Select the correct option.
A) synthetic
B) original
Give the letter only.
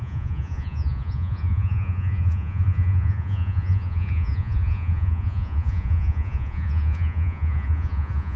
A